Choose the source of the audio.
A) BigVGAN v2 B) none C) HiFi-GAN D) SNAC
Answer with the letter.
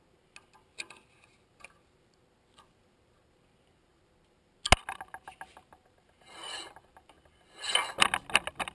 B